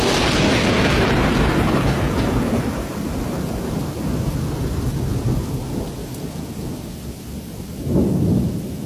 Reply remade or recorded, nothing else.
recorded